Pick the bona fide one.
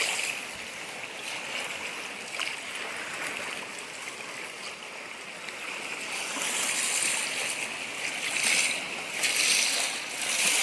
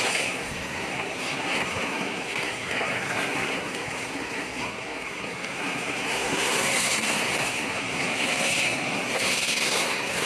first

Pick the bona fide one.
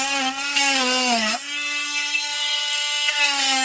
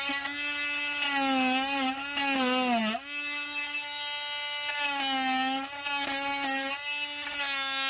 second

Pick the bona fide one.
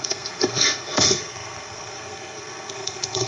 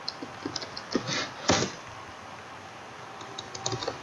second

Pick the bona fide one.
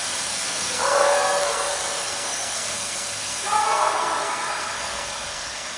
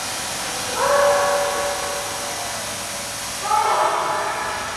second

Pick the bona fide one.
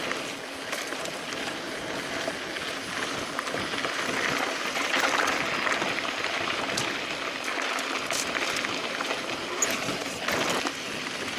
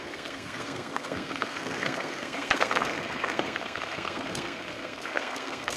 first